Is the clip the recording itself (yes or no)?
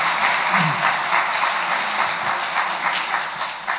yes